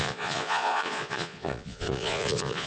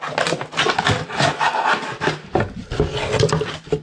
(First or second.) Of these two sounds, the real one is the second